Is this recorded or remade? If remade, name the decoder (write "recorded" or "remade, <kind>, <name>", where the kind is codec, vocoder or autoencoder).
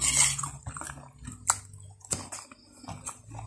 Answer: recorded